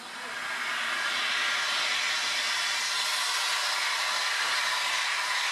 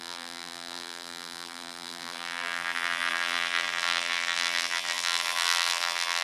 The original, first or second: first